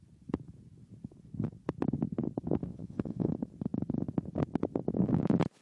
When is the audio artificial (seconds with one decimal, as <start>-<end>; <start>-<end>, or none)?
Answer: 2.7-3.3